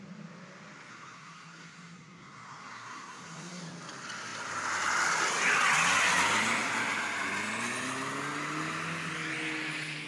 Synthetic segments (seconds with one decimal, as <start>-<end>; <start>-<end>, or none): 0.9-3.6

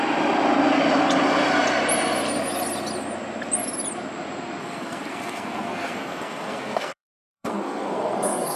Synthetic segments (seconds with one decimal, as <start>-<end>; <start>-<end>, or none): 4.6-8.6

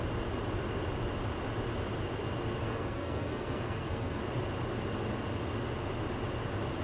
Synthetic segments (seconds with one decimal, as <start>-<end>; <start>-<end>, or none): 2.6-4.2